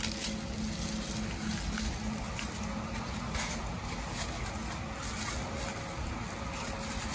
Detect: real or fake real